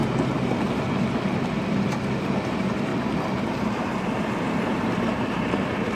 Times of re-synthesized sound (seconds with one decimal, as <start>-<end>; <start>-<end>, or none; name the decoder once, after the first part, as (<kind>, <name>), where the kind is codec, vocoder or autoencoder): 2.2-2.9 (vocoder, BigVGAN v2); 3.6-5.9